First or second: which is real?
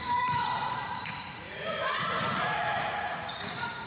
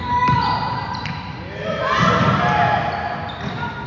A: second